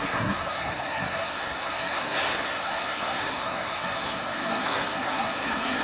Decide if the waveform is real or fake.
fake